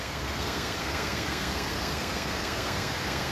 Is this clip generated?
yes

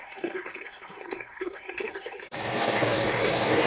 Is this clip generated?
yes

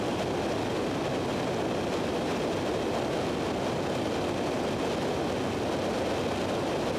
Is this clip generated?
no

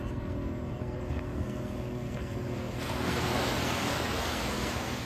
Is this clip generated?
yes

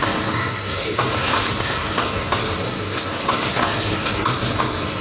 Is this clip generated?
yes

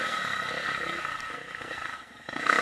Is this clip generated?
yes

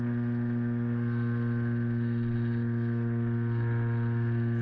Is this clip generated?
no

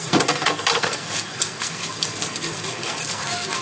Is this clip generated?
yes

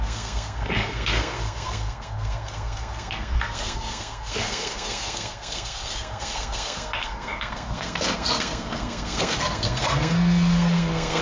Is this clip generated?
yes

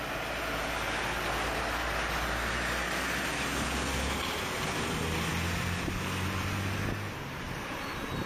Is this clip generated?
no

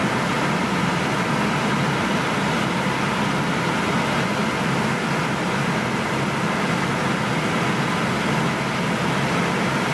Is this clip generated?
no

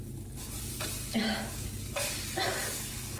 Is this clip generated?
no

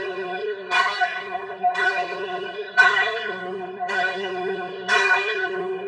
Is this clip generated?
yes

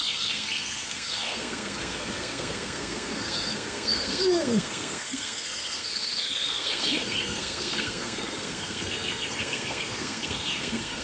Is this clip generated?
yes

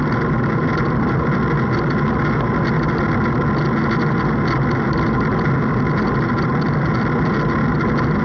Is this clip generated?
no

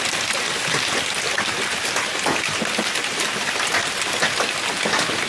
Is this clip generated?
no